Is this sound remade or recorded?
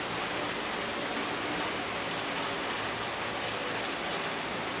recorded